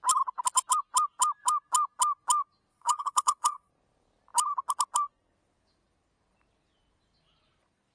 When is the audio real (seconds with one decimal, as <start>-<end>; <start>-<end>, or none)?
0.0-2.7; 3.7-7.9